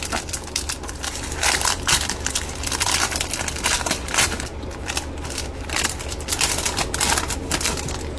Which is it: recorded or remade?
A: remade